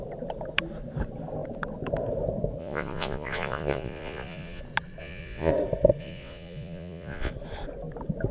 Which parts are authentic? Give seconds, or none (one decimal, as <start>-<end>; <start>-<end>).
0.0-2.6; 4.6-5.0; 5.5-6.0; 7.3-8.3